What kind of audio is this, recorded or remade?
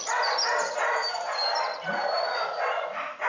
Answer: recorded